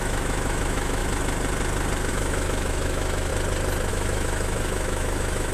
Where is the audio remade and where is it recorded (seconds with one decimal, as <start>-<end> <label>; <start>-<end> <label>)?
0.0-1.0 remade; 1.0-2.1 recorded; 2.1-3.3 remade; 3.3-3.9 recorded; 3.9-5.5 remade